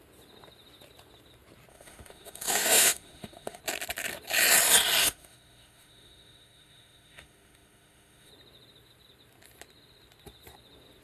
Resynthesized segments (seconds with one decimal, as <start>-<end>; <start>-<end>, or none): 1.7-3.6; 5.0-8.3